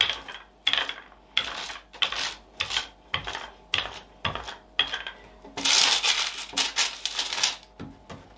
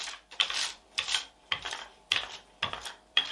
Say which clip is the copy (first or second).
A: second